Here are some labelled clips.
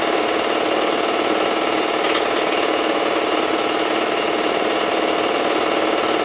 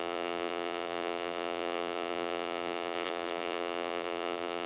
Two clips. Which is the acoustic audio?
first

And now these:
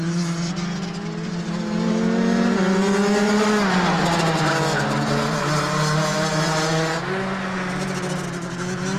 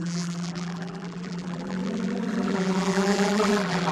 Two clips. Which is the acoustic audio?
first